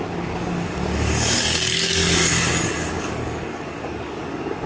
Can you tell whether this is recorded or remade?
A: remade